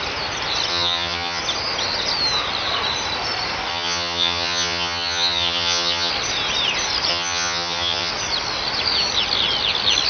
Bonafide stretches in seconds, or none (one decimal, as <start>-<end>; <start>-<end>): 0.0-0.7; 1.4-3.7; 6.1-7.1; 8.1-10.1